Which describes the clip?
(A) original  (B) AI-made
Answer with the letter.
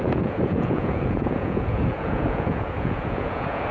B